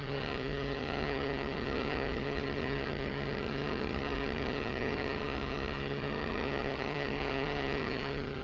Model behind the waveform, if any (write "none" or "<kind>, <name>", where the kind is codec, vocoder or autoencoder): vocoder, HiFi-GAN